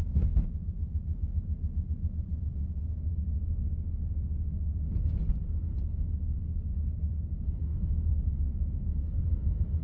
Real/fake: real